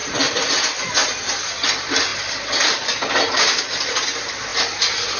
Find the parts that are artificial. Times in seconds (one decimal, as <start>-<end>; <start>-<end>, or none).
none